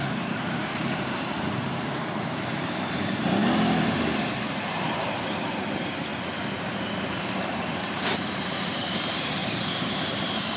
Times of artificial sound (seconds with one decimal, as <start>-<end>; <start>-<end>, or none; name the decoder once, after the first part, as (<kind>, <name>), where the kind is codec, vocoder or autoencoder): 0.0-3.4 (vocoder, BigVGAN v2); 4.0-6.1; 7.1-9.4; 9.9-10.6